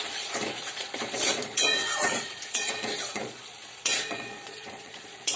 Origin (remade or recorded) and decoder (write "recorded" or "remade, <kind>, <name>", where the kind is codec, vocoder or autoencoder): remade, vocoder, Vocos